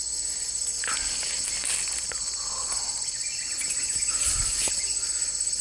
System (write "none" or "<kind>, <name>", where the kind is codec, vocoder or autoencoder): none